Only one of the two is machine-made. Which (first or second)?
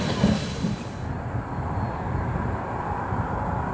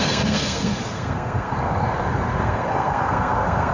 second